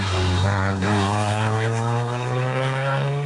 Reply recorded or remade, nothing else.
remade